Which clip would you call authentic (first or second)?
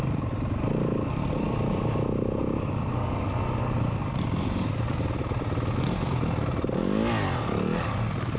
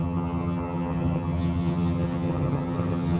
first